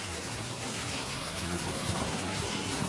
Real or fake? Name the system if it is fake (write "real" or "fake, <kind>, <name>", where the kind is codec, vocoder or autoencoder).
fake, codec, SNAC